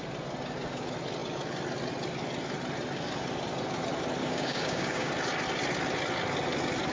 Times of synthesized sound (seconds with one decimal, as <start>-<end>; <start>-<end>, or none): 4.2-5.1